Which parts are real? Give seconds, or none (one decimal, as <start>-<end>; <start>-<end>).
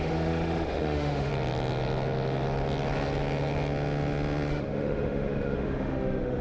1.3-4.5